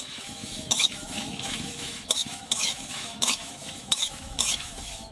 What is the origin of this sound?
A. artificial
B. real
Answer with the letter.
A